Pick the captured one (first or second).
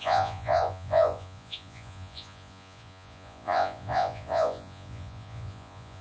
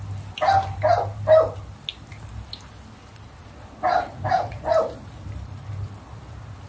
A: second